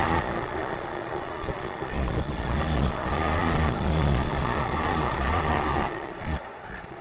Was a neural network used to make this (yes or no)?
yes